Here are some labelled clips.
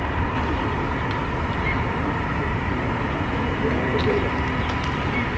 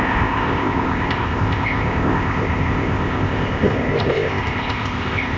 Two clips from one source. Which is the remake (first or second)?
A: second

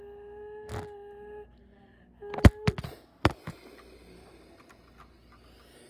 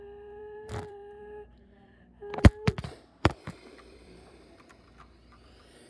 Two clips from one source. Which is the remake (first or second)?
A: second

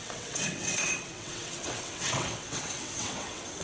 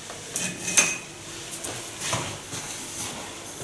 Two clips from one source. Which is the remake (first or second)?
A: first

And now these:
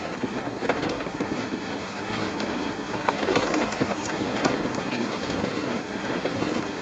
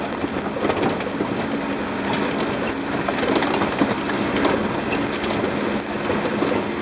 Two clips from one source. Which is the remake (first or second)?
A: first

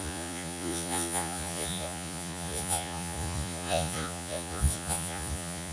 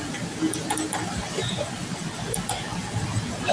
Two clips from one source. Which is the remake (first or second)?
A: first